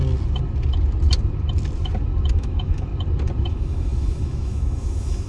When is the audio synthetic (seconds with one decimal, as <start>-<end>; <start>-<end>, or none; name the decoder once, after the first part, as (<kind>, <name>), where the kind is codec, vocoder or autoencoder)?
2.3-2.9 (autoencoder, DAC-VAE); 3.5-5.3